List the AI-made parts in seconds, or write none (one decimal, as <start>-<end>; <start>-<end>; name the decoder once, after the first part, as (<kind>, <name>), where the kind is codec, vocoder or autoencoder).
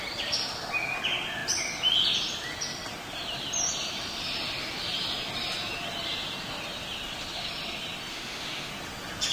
8.1-8.7 (autoencoder, DAC-VAE)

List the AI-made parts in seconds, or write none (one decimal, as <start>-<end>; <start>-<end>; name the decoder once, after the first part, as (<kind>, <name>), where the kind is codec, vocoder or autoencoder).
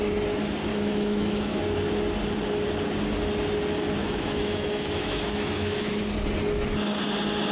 0.7-1.6 (autoencoder, DAC-VAE); 4.0-6.0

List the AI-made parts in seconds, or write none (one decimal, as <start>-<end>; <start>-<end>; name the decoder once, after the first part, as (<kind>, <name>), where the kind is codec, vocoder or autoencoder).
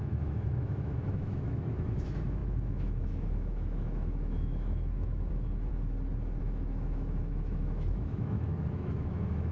0.0-5.7 (autoencoder, DAC-VAE); 6.4-9.5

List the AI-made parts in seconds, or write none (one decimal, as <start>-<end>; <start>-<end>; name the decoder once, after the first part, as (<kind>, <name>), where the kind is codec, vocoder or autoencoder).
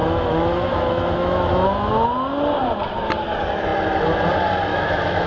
0.0-1.9 (autoencoder, DAC-VAE); 4.7-5.3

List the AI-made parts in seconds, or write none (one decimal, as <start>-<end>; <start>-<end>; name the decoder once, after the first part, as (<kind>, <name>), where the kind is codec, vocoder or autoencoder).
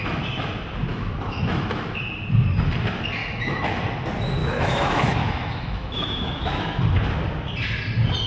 0.9-2.0 (autoencoder, DAC-VAE); 3.2-3.8; 4.4-6.8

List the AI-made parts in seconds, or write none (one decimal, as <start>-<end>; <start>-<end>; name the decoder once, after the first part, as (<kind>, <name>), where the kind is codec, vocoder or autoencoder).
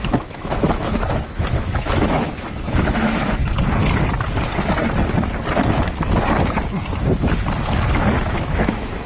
0.0-3.4 (autoencoder, DAC-VAE); 8.3-9.1